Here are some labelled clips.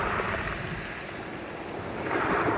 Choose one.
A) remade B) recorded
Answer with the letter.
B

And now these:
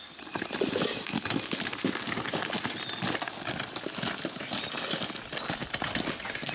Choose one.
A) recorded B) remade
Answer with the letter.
A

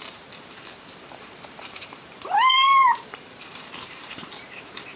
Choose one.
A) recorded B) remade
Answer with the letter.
B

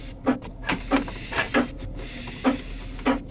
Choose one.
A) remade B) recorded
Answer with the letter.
B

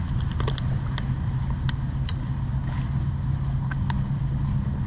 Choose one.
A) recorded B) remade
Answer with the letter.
A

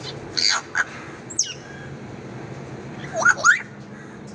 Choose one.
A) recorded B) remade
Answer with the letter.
A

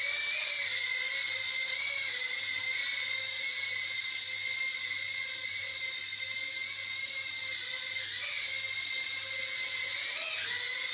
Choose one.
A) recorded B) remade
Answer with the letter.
A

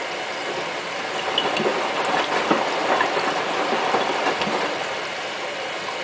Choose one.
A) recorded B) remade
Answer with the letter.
A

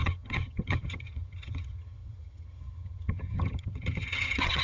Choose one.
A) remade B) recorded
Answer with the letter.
A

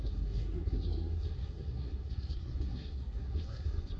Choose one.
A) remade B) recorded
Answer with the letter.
A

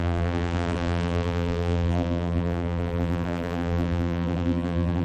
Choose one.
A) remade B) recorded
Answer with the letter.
A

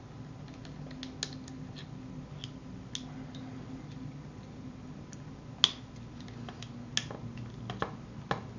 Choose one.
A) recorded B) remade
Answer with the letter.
A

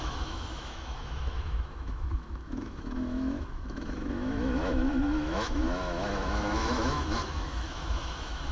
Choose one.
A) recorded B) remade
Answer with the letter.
B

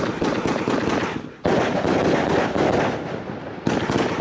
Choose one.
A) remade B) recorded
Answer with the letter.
B